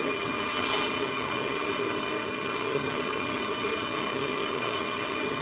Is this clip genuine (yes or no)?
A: no